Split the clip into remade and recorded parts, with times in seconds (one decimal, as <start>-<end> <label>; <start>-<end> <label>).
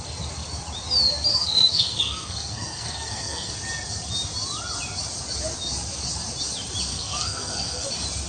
0.0-1.3 recorded; 1.3-3.5 remade; 3.5-6.9 recorded; 6.9-7.9 remade; 7.9-8.3 recorded